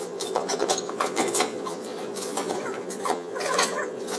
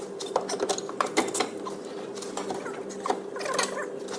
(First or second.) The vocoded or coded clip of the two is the first